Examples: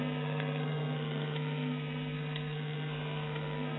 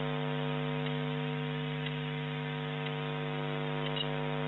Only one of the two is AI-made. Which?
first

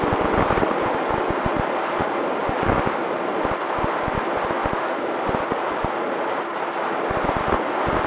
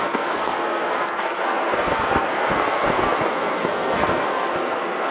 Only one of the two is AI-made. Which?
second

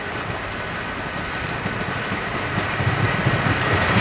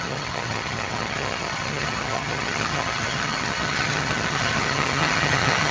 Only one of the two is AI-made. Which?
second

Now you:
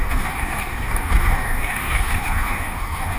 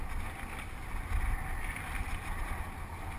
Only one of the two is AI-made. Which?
first